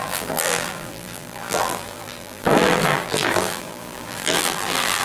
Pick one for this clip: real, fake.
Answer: fake